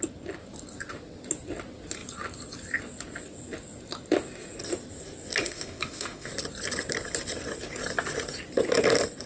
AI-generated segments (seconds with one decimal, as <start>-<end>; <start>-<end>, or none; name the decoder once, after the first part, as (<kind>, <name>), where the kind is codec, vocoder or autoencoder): 5.4-6.3 (autoencoder, DAC-VAE)